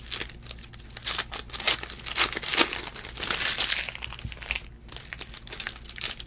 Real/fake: real